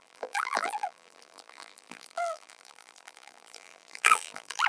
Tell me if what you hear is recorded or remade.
remade